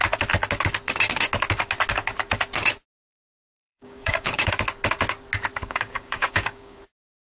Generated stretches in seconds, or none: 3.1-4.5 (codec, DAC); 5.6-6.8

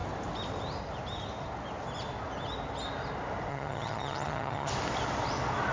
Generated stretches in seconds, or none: 3.5-4.7 (vocoder, HiFi-GAN)